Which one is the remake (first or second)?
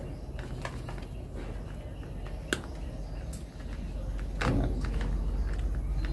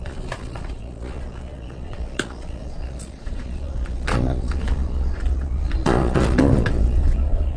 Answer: second